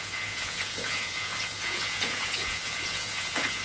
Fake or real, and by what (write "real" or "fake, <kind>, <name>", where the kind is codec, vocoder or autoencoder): fake, vocoder, Vocos